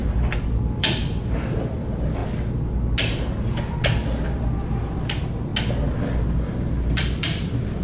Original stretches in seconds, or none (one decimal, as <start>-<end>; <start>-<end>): 2.2-4.8; 5.5-6.4